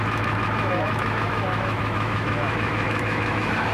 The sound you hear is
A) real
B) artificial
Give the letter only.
B